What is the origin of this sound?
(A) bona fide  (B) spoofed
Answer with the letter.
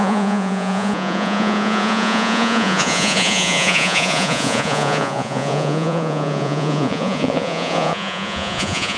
B